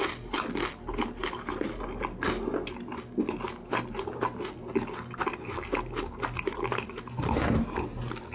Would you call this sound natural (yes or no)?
yes